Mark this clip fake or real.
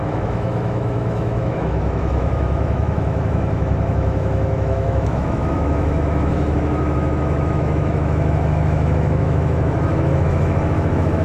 fake